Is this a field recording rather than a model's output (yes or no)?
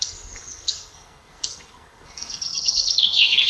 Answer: no